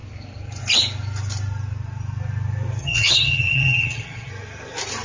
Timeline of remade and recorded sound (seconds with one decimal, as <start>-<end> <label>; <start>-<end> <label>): 0.0-2.8 recorded; 2.8-4.3 remade; 4.3-5.0 recorded